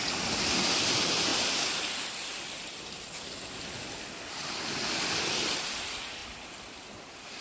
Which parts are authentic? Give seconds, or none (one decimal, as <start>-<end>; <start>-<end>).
0.0-7.4